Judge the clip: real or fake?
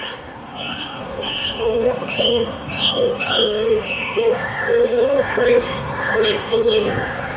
fake